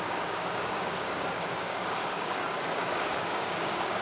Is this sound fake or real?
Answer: fake